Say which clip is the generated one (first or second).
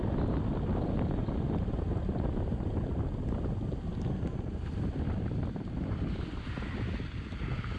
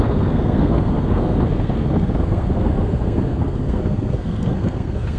second